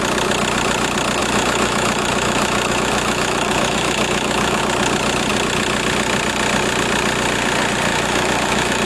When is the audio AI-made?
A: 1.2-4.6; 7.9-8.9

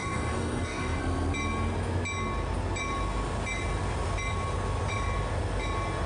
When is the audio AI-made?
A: 0.0-1.0

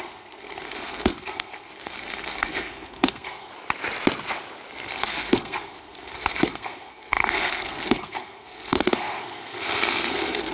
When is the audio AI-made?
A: 0.0-3.5; 4.7-10.5

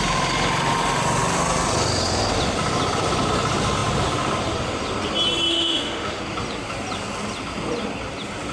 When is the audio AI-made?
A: 5.5-6.2

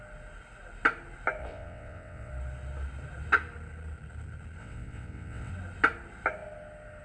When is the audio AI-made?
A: 1.4-2.3; 4.6-5.5

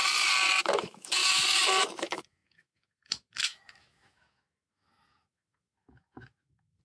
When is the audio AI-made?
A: 0.6-1.2; 1.8-6.8

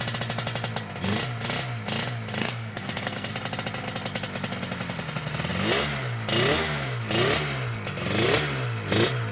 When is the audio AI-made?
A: 2.4-3.3